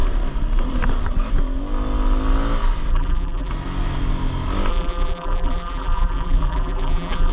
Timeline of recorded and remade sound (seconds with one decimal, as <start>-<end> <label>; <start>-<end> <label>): 0.0-2.9 recorded; 2.9-3.5 remade; 3.5-4.7 recorded; 4.7-7.3 remade

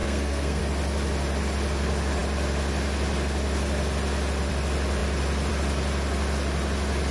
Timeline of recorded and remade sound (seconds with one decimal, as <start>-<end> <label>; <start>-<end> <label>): 0.0-0.6 remade; 0.6-7.1 recorded

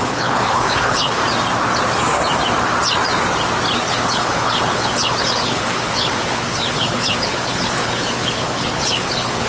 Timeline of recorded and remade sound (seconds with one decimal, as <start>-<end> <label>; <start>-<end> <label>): 0.0-1.2 remade; 1.2-3.8 recorded; 3.8-9.5 remade